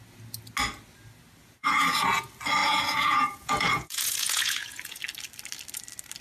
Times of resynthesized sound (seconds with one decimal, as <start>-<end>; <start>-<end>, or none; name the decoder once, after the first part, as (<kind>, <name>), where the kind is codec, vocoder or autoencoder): 1.4-2.2 (vocoder, Vocos); 2.6-5.0